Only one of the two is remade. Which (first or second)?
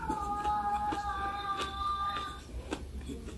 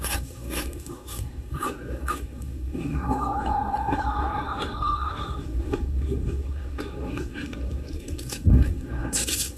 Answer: second